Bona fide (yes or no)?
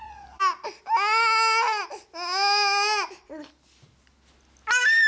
yes